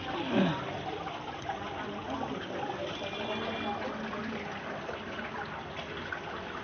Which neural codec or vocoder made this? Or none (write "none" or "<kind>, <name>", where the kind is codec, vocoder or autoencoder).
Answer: none